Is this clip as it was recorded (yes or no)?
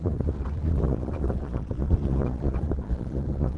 no